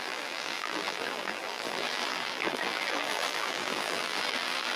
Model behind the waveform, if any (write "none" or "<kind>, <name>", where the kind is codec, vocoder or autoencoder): vocoder, BigVGAN v2